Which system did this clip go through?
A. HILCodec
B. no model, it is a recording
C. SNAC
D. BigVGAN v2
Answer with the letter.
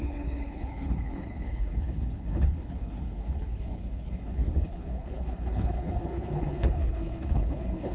A